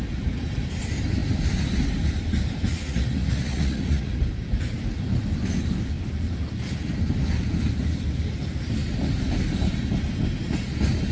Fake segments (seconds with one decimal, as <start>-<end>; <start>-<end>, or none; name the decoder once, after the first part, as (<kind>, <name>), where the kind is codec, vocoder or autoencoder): 2.7-4.2 (vocoder, Vocos)